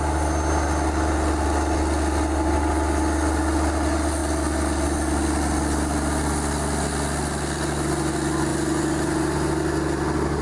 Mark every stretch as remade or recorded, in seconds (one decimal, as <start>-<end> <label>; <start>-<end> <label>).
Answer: 0.0-10.4 recorded